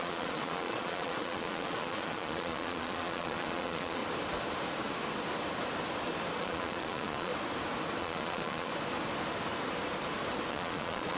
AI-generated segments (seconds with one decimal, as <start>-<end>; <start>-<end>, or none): 0.0-4.0; 6.4-7.3; 8.0-8.7; 10.5-11.2